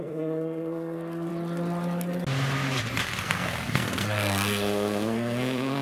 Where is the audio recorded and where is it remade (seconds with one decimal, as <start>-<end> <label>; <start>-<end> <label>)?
0.0-1.3 remade; 1.3-3.2 recorded; 3.2-5.8 remade

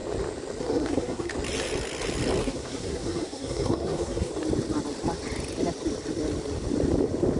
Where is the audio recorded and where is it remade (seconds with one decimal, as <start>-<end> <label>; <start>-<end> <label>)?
0.0-0.6 recorded; 0.6-1.3 remade; 1.3-2.4 recorded; 2.4-4.3 remade; 4.3-7.4 recorded